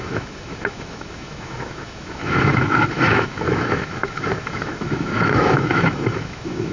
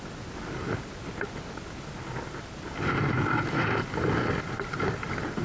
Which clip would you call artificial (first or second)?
first